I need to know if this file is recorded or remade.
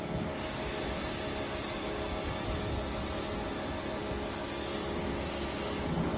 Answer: recorded